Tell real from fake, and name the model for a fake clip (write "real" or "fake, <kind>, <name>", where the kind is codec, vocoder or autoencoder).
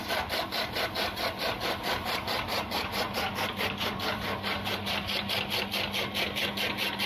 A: real